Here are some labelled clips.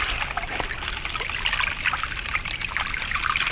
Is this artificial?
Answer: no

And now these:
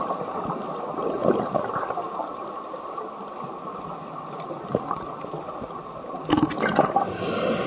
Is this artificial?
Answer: no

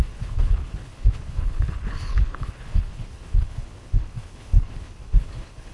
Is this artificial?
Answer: yes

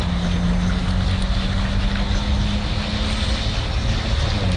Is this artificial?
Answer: no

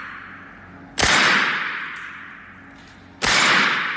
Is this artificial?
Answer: no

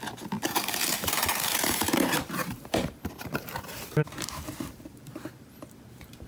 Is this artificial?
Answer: yes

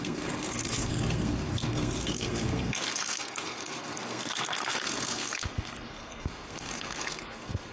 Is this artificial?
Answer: yes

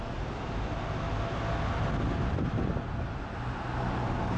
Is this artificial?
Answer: no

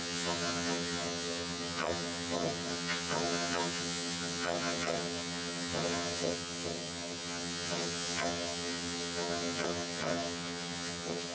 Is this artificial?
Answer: yes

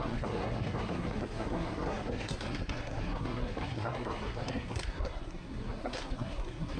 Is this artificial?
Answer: yes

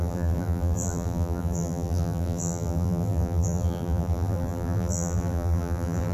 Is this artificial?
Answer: yes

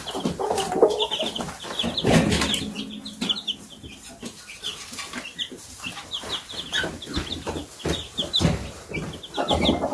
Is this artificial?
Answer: no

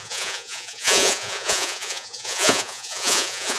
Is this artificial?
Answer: yes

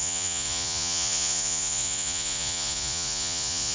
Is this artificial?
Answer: yes